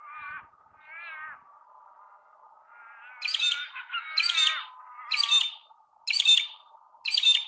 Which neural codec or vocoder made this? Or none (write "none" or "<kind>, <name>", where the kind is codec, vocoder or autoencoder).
none